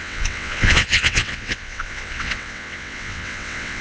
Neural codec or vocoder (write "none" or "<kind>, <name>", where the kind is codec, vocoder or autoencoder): vocoder, WaveNeXt